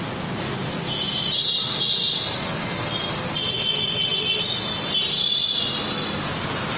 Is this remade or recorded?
recorded